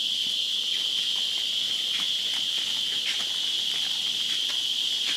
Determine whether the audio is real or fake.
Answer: real